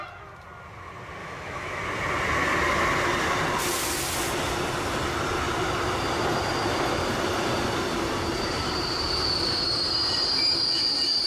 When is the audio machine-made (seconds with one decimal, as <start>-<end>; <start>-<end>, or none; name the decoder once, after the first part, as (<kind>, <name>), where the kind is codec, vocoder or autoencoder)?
1.2-1.8 (autoencoder, DAC-VAE)